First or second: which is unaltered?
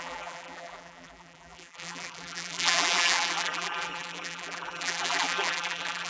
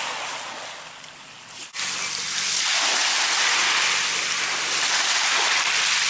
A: second